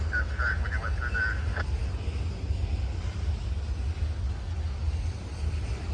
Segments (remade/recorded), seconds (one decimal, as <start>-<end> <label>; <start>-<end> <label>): 0.0-5.9 recorded